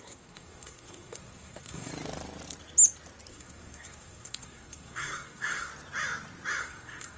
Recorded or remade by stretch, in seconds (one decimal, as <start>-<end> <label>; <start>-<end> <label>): 0.0-1.9 remade; 1.9-3.3 recorded; 3.3-5.7 remade; 5.7-6.6 recorded; 6.6-7.2 remade